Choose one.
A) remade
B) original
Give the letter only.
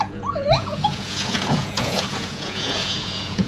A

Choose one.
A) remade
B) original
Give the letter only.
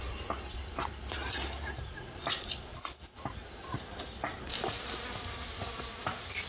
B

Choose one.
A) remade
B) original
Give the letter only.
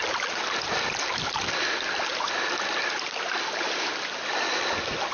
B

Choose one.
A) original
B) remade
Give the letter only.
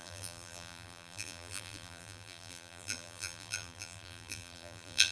B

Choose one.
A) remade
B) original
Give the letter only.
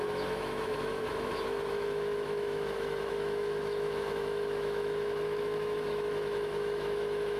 A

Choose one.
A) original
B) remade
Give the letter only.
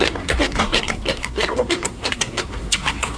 B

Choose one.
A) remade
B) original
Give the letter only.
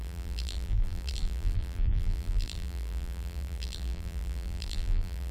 A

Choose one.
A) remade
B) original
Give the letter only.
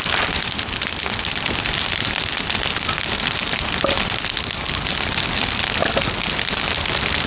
B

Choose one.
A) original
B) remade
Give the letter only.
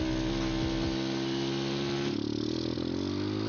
A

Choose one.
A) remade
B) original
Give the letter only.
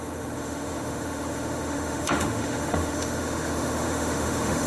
A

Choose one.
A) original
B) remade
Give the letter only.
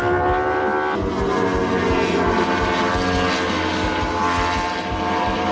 A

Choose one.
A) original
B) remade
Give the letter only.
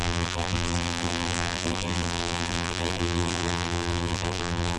B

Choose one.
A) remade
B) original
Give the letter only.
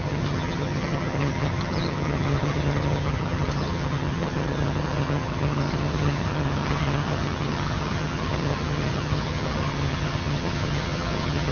A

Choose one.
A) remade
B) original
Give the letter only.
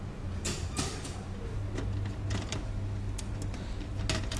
B